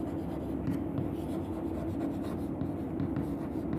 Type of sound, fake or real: real